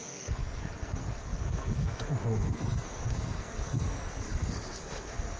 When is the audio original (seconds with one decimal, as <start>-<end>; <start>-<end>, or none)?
none